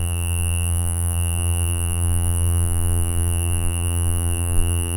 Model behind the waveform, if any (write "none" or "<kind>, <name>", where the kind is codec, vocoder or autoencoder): vocoder, BigVGAN v2